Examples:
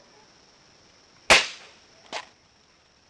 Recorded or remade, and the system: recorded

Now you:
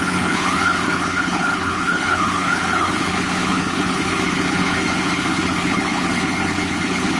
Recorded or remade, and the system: remade, codec, HILCodec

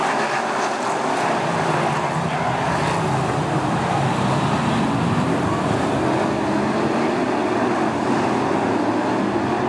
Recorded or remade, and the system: recorded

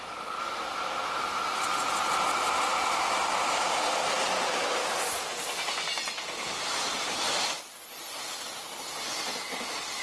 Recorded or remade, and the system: recorded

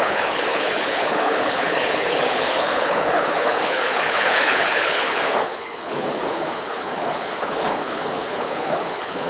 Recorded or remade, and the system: remade, codec, HILCodec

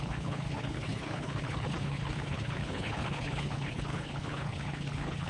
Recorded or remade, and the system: remade, codec, HILCodec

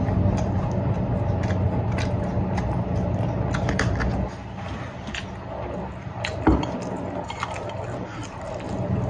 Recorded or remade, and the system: recorded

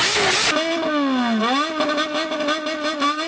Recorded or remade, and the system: recorded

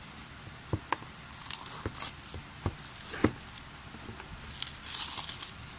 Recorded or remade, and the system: recorded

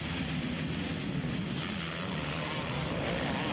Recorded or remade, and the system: recorded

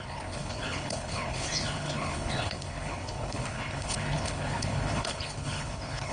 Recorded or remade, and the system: remade, codec, HILCodec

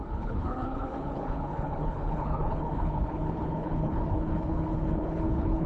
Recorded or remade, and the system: remade, codec, HILCodec